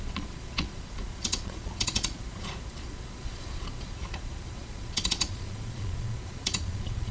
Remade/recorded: remade